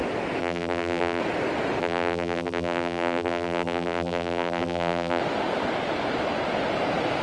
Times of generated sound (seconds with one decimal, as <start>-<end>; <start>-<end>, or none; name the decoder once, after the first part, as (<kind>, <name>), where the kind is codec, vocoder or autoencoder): 0.4-1.2 (vocoder, BigVGAN v2); 1.8-5.2